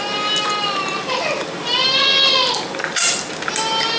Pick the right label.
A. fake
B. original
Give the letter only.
B